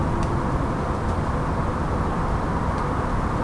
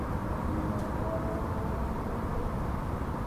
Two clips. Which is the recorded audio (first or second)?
first